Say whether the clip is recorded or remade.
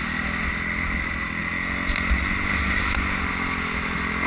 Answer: recorded